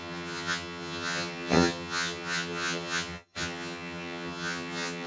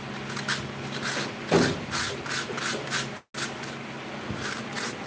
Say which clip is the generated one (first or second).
first